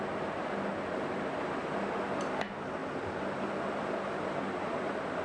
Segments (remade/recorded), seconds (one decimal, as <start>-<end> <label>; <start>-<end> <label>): 0.0-5.2 recorded